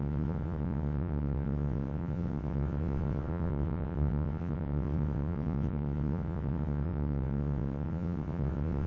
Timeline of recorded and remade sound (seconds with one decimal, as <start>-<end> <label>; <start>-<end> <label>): 0.0-8.9 remade